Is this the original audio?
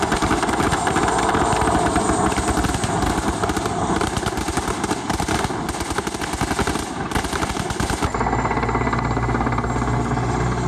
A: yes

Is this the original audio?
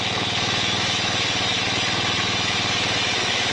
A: no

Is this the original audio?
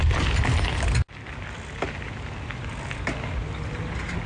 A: yes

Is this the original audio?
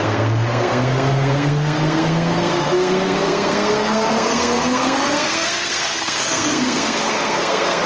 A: no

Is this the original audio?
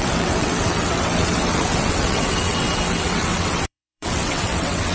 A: no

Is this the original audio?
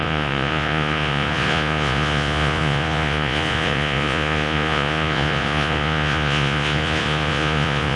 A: no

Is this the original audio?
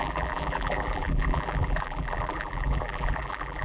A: no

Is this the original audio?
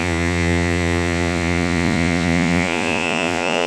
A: no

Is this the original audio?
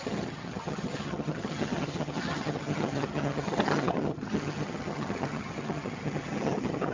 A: no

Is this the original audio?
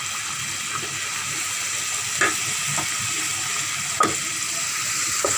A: yes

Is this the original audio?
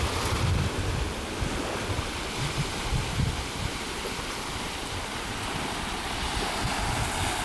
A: yes